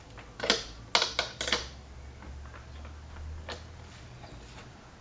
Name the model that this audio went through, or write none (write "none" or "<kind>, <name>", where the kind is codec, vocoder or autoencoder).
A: none